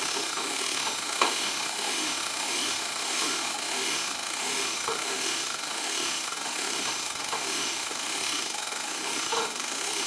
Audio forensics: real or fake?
fake